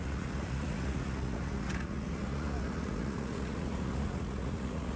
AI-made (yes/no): yes